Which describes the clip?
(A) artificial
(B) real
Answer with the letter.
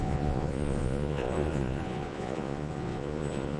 A